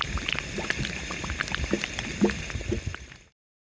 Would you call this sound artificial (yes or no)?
no